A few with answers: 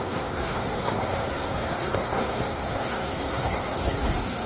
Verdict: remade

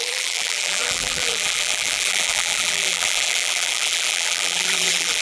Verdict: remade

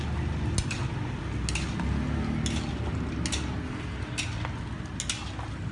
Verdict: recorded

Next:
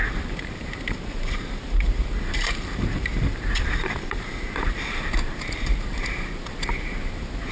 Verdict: remade